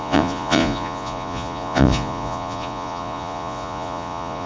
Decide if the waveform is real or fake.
fake